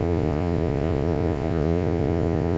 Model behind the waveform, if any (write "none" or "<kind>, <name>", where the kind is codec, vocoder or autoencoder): vocoder, Vocos